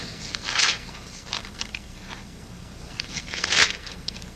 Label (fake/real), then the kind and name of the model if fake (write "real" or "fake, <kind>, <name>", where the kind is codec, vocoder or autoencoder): fake, codec, SNAC